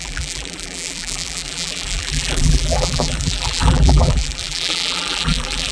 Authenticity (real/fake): fake